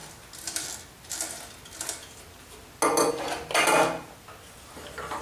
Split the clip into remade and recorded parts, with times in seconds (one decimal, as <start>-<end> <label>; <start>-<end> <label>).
0.0-5.2 recorded